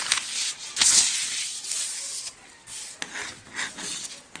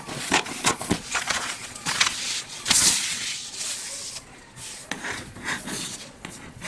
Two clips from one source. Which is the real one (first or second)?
first